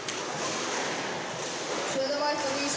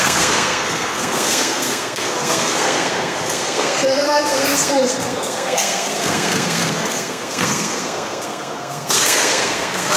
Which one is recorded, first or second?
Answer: first